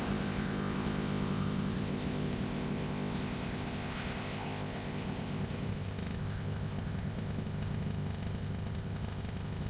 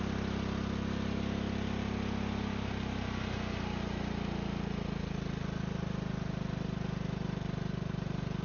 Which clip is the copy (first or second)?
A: first